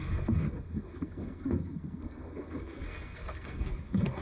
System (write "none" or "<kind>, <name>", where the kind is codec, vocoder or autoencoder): codec, SNAC